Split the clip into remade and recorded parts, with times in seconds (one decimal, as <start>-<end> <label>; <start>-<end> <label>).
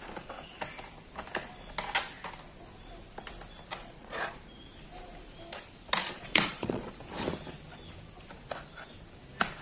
0.0-3.7 recorded; 3.7-4.4 remade; 4.4-6.0 recorded; 6.0-6.9 remade; 6.9-9.6 recorded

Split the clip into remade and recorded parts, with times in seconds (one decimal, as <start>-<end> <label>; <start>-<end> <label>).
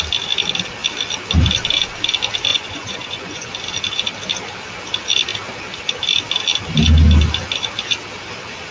0.0-2.5 recorded; 2.5-3.5 remade; 3.5-8.7 recorded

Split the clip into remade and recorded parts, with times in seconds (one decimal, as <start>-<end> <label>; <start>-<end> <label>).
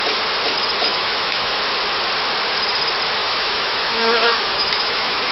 0.0-0.9 recorded; 0.9-1.6 remade; 1.6-3.2 recorded; 3.2-5.3 remade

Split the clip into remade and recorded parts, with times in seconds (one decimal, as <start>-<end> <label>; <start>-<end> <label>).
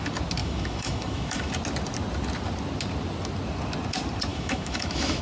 0.0-0.4 recorded; 0.4-1.5 remade; 1.5-4.3 recorded; 4.3-5.2 remade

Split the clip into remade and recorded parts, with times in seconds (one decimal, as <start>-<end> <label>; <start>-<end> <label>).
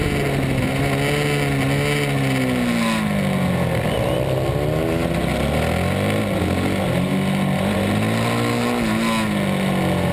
0.0-10.1 recorded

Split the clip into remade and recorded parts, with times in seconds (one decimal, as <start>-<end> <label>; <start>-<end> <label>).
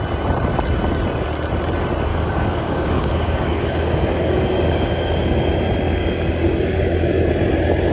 0.0-2.1 recorded; 2.1-5.5 remade; 5.5-6.0 recorded; 6.0-7.3 remade; 7.3-7.9 recorded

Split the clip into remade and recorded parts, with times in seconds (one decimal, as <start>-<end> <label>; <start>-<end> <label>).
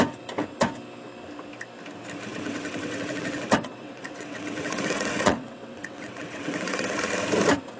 0.0-2.3 recorded; 2.3-7.0 remade; 7.0-7.8 recorded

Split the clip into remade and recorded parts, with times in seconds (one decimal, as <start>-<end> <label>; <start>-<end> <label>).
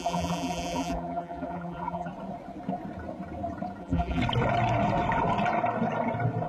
0.0-2.1 remade; 2.1-3.8 recorded; 3.8-4.2 remade; 4.2-6.5 recorded